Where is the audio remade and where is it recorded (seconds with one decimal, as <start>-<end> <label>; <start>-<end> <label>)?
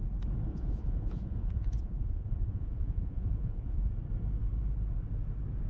0.0-0.5 recorded; 0.5-3.9 remade; 3.9-5.7 recorded